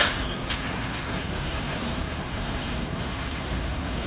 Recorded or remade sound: remade